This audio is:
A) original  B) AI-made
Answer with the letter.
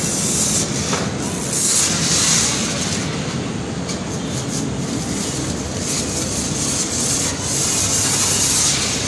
A